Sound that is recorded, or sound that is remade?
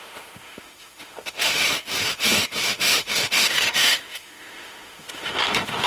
remade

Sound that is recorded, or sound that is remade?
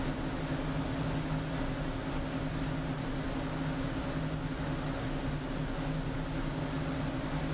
recorded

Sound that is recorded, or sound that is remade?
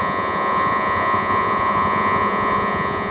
remade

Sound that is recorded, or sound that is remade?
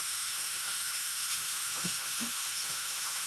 remade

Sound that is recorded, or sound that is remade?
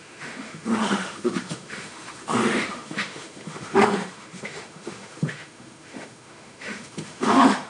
remade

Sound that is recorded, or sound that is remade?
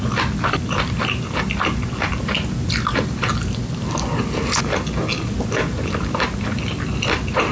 recorded